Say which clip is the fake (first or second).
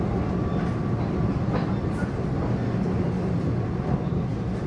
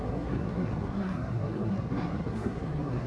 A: second